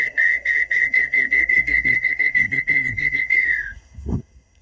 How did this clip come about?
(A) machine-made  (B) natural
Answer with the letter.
A